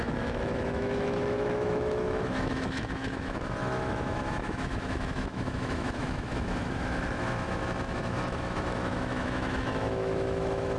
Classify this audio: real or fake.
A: fake